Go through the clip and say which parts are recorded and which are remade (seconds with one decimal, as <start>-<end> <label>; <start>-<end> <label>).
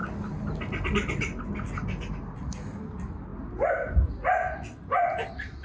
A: 0.0-5.6 recorded